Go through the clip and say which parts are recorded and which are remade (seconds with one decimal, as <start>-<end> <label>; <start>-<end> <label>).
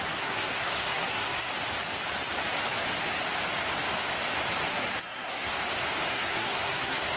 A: 0.0-1.5 remade; 1.5-4.7 recorded; 4.7-5.5 remade; 5.5-6.1 recorded; 6.1-7.2 remade